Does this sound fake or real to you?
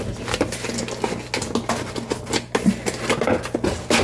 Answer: real